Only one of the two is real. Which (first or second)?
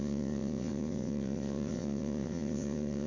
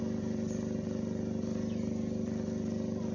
second